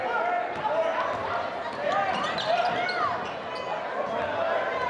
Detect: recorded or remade recorded